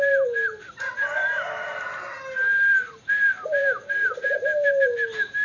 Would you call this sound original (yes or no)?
yes